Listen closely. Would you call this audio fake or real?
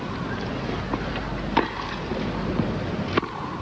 real